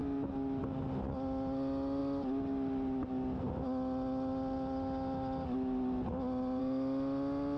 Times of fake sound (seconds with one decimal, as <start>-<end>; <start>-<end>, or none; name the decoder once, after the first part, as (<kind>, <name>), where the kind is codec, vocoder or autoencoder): none